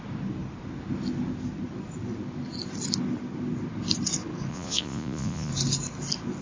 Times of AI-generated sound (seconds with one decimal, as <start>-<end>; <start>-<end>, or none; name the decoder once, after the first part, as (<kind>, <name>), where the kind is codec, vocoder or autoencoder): 4.5-5.5 (vocoder, Vocos)